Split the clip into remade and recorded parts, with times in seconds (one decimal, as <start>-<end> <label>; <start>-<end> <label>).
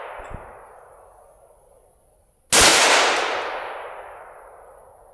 0.0-2.7 recorded; 2.7-3.5 remade; 3.5-5.1 recorded